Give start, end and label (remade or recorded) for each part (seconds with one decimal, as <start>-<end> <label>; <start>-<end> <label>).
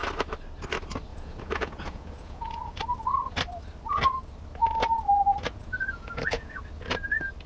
0.0-1.1 recorded; 1.1-2.8 remade; 2.8-5.6 recorded; 5.6-6.6 remade; 6.6-7.5 recorded